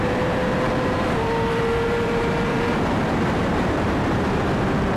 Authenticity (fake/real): fake